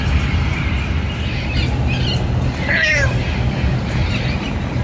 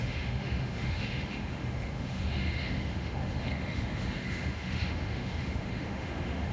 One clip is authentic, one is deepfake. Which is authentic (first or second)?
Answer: first